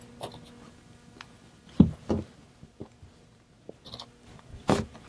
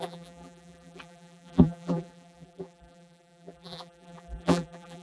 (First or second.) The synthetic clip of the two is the second